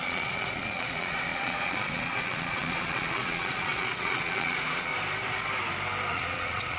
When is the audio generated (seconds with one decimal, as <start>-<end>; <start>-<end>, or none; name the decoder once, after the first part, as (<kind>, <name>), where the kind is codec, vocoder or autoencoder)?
0.0-4.9 (vocoder, Vocos); 6.1-6.8